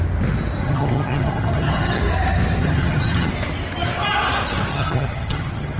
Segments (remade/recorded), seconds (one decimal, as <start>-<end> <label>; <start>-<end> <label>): 0.0-0.6 recorded; 0.6-2.0 remade; 2.0-2.6 recorded; 2.6-3.3 remade; 3.3-4.7 recorded; 4.7-5.8 remade